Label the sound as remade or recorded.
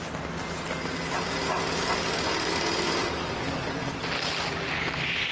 recorded